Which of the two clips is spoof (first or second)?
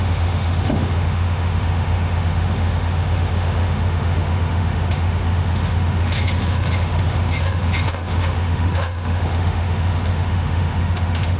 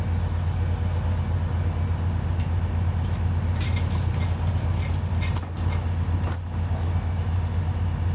first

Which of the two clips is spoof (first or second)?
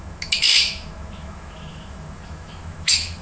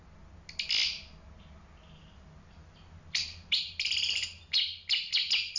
first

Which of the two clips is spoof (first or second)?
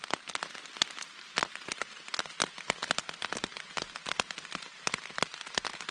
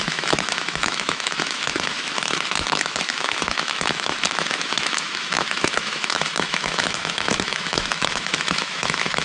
second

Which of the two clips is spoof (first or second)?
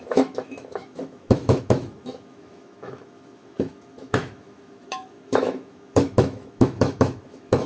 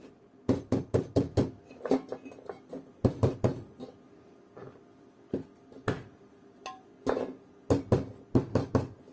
first